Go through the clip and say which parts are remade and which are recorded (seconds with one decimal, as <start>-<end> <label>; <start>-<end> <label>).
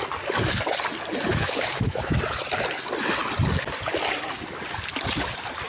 0.0-1.3 recorded; 1.3-2.2 remade; 2.2-5.7 recorded